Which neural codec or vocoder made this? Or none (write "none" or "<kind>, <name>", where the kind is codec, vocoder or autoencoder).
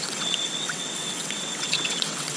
vocoder, WaveNeXt